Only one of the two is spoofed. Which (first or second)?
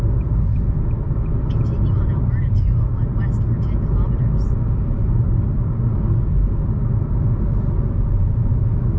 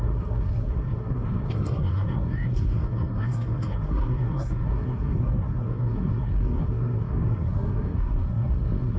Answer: second